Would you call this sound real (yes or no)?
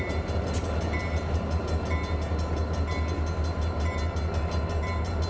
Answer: yes